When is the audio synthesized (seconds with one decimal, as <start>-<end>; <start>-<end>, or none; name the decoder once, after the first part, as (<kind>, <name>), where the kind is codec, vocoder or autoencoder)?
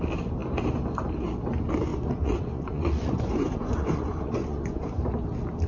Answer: 1.9-4.8 (vocoder, Vocos)